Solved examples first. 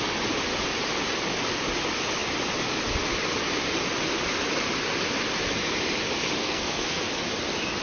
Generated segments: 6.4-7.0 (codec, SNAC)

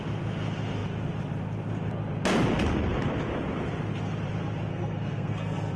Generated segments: 4.7-5.8 (codec, SNAC)

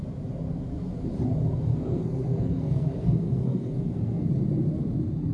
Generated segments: 1.7-4.3 (codec, SNAC)

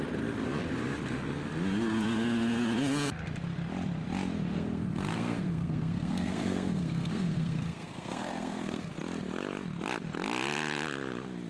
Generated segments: 4.5-8.9 (codec, SNAC)

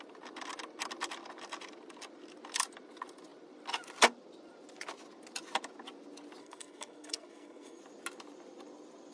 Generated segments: 6.4-7.8 (codec, SNAC)

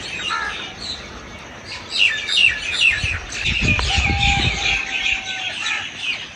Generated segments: none

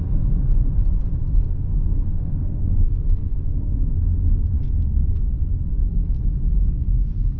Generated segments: 1.7-3.9 (codec, SNAC)

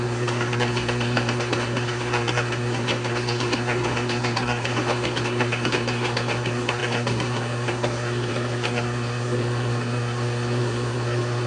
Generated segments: 0.0-11.5 (codec, SNAC)